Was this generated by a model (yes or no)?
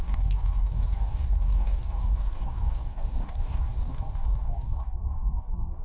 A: yes